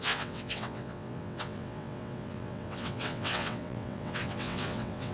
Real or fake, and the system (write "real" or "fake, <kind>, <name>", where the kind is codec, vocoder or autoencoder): fake, vocoder, WaveNeXt